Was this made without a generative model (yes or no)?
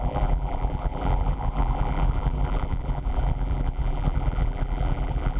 no